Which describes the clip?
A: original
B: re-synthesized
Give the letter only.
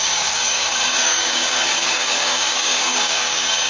B